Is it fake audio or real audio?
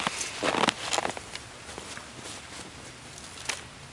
real